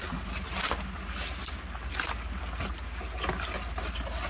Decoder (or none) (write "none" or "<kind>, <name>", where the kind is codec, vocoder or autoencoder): none